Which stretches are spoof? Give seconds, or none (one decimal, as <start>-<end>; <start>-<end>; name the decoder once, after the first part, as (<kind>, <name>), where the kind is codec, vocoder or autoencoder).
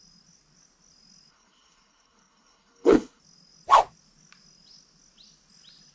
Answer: 1.3-3.2 (codec, HILCodec)